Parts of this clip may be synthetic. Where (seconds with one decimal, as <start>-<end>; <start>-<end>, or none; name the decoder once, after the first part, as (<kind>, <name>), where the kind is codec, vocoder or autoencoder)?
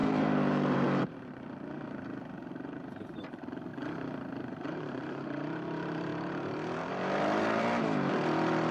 0.0-3.7 (vocoder, BigVGAN v2); 4.7-8.7